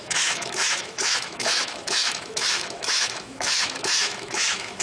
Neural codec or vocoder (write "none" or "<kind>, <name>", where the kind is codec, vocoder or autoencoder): autoencoder, DAC-VAE